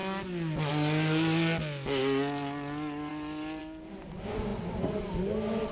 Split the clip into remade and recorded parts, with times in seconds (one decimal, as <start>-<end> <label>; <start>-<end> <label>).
0.0-5.7 recorded